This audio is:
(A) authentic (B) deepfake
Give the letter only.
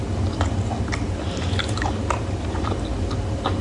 A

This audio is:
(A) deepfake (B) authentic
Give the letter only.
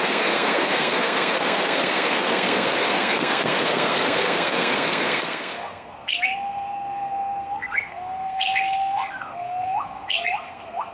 A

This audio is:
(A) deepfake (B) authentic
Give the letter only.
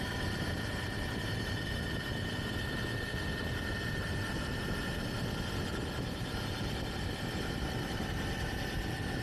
B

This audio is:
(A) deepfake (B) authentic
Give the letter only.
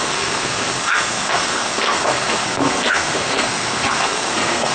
A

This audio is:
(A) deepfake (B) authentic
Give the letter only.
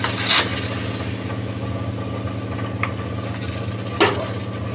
B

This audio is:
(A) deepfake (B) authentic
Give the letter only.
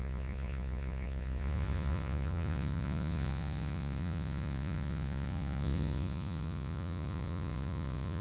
A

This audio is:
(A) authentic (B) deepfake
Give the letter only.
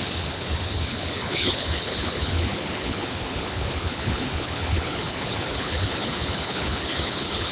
B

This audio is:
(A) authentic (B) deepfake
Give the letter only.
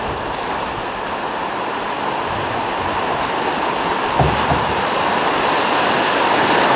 A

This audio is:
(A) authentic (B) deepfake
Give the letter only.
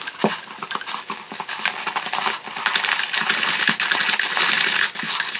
A